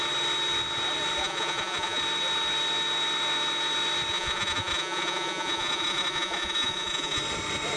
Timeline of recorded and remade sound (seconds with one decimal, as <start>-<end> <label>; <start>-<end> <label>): 0.0-1.2 recorded; 1.2-2.0 remade; 2.0-4.1 recorded; 4.1-7.2 remade; 7.2-7.8 recorded